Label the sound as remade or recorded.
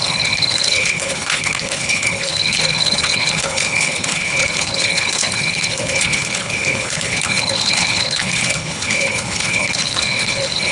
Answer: remade